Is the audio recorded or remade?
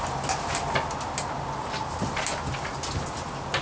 recorded